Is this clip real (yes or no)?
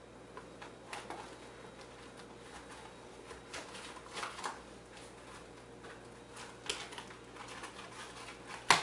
yes